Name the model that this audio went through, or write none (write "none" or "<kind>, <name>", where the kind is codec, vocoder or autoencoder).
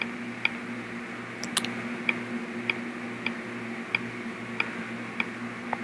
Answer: none